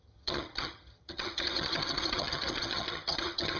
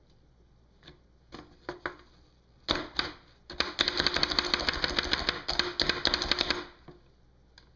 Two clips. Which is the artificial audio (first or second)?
first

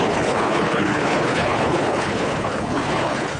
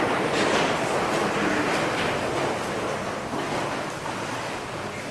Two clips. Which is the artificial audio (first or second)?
first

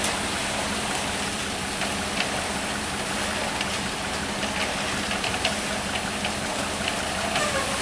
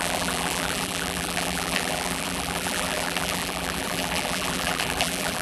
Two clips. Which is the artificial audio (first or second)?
second